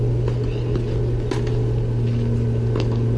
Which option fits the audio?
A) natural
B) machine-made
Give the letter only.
A